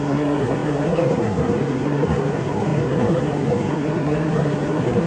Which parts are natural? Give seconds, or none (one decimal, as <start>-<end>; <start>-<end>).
none